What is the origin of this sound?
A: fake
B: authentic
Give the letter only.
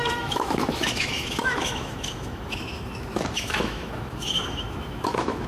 A